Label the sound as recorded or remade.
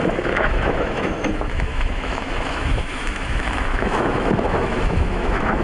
remade